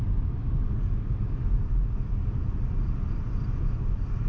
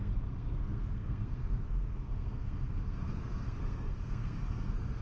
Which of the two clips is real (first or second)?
first